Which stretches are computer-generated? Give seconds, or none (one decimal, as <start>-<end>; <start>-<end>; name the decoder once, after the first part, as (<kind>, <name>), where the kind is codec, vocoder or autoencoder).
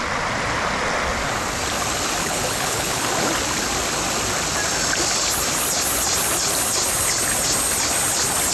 2.2-3.1 (codec, HILCodec)